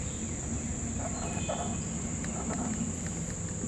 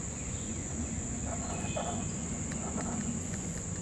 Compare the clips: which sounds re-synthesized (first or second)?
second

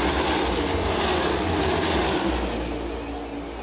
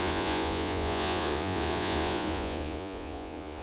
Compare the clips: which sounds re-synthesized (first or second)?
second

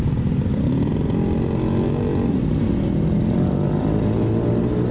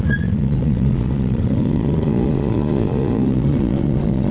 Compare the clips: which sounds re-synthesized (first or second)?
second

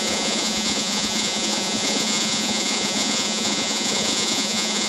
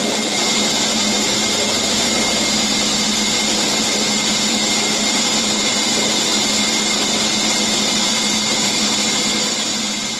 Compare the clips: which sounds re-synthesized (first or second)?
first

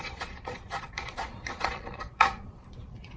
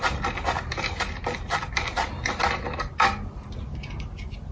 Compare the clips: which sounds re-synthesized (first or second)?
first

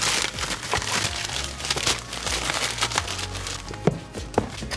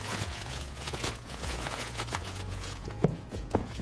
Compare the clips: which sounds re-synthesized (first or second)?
second